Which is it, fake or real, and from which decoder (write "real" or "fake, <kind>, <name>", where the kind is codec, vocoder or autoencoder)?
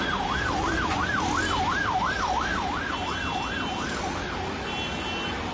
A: real